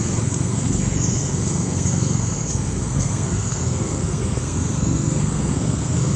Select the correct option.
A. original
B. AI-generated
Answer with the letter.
B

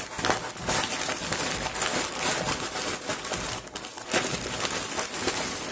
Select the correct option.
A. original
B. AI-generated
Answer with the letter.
A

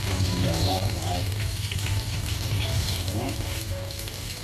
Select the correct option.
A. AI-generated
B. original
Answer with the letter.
A